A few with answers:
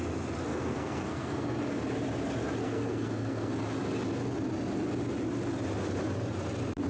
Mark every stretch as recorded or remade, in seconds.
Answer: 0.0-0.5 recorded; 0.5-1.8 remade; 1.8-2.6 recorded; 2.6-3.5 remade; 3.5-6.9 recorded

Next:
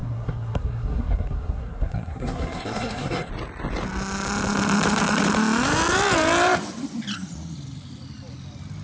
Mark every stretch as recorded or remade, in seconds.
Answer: 0.0-3.3 remade; 3.3-8.8 recorded

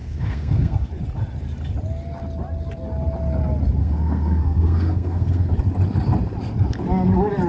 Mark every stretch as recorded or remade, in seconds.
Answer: 0.0-0.9 remade; 0.9-3.8 recorded; 3.8-5.5 remade; 5.5-7.5 recorded

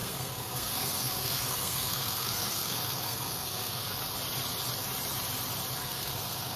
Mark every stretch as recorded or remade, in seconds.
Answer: 0.0-4.0 remade; 4.0-5.8 recorded; 5.8-6.6 remade

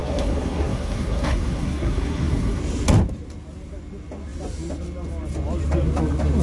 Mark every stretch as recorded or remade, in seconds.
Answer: 0.0-2.6 remade; 2.6-6.4 recorded